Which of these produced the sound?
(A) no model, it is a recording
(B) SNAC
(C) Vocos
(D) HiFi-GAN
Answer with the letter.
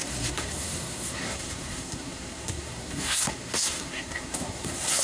B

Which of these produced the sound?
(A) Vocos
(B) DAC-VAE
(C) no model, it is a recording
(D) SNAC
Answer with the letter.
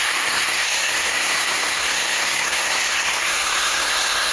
D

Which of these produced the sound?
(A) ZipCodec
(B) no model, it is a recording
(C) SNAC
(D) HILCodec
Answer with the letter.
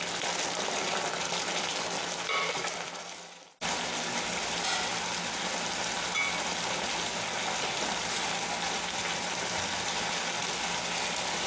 B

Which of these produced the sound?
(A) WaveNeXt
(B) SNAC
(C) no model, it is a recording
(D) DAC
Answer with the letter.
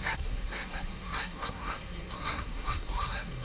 B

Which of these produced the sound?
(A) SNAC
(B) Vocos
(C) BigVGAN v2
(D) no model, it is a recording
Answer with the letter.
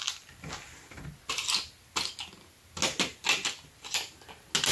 D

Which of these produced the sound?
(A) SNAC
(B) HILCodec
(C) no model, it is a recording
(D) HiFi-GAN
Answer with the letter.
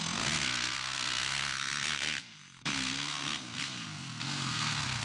A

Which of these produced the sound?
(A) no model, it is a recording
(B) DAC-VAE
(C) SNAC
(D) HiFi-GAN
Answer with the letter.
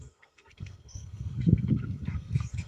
C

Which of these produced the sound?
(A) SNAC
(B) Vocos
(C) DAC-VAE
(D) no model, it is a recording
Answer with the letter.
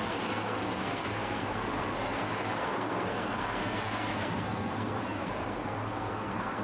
A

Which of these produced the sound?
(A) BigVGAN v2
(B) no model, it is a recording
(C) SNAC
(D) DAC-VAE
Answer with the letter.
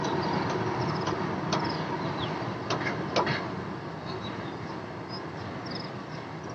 B